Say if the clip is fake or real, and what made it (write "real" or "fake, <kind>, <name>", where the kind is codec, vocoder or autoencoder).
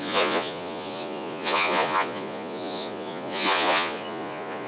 fake, vocoder, Vocos